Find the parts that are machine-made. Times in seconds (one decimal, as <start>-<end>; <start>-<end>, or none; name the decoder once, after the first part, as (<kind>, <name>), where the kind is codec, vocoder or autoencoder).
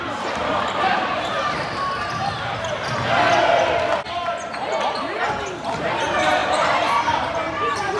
0.0-2.2 (vocoder, BigVGAN v2); 5.0-8.0